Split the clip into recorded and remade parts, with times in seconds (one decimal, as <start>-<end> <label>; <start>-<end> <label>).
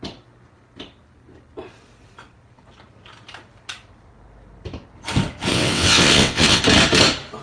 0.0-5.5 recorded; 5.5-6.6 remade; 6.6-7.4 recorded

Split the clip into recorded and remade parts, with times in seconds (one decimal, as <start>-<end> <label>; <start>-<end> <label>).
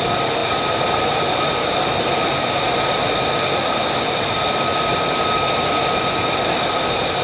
0.0-7.2 recorded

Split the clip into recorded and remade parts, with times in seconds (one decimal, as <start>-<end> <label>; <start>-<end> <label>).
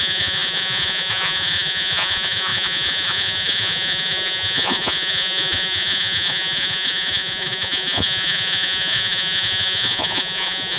0.0-10.8 remade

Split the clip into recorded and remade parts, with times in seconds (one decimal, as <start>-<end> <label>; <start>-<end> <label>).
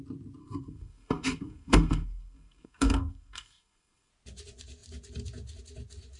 0.0-0.4 recorded; 0.4-4.1 remade; 4.1-6.2 recorded